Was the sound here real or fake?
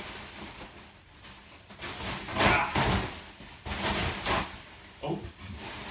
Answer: fake